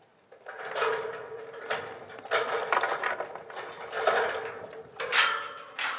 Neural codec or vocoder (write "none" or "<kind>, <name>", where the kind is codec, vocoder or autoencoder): none